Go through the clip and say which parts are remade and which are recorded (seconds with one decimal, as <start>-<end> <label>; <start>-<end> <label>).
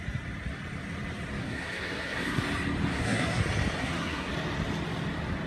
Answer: 0.0-1.4 recorded; 1.4-2.4 remade; 2.4-2.9 recorded; 2.9-3.4 remade; 3.4-3.8 recorded; 3.8-4.3 remade; 4.3-5.5 recorded